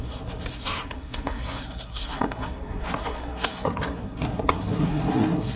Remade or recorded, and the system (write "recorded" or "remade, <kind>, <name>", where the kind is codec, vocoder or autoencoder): remade, codec, SNAC